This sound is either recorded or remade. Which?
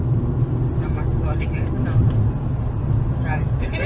recorded